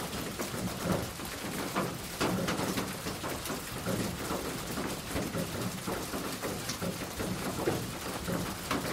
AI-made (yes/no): no